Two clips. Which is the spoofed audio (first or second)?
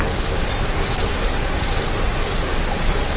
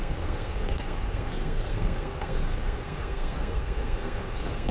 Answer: second